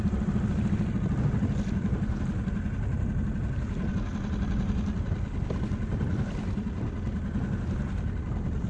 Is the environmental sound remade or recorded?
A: recorded